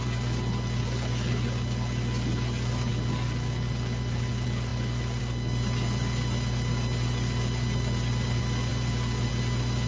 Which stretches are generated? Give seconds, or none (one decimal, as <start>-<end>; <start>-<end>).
none